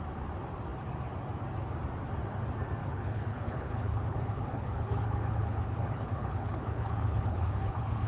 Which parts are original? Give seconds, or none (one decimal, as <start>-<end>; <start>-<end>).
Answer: 0.0-2.8